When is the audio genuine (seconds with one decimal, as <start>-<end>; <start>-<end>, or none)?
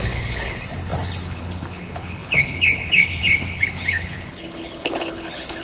none